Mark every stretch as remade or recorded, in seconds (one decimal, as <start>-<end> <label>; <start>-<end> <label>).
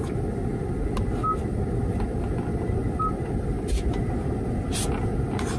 0.0-5.6 recorded